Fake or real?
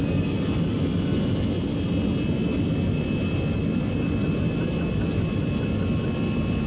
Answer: real